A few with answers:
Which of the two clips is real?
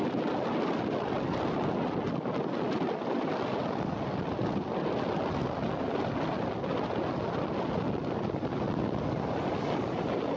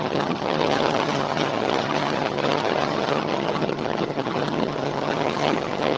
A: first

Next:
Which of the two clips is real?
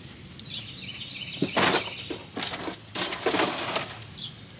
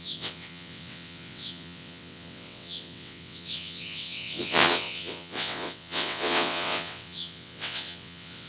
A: first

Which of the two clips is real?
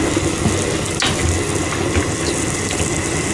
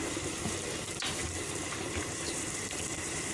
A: first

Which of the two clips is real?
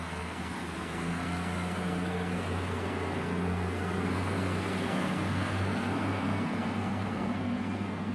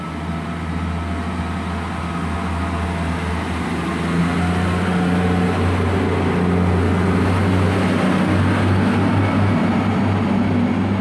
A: second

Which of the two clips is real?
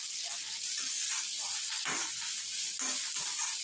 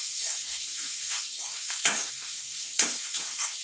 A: first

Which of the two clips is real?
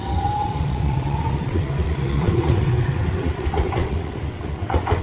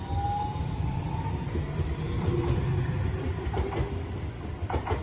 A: second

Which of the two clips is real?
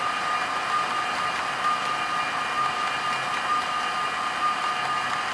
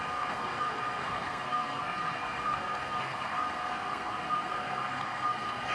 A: first